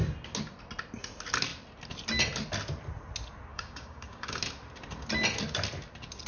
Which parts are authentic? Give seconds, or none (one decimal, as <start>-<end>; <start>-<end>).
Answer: 0.0-3.5; 4.4-6.3